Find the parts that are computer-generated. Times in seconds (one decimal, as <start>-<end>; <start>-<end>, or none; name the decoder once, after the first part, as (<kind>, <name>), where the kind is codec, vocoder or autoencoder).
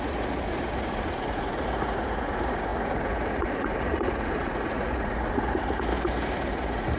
0.0-5.9 (vocoder, Vocos); 6.5-7.0